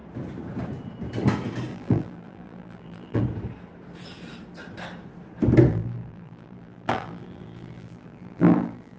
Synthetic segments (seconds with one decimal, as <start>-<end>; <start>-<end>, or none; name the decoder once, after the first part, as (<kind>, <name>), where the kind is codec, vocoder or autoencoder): 1.7-3.2 (vocoder, BigVGAN v2); 5.7-9.0